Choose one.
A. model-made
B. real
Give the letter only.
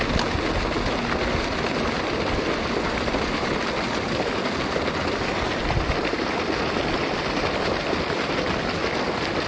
B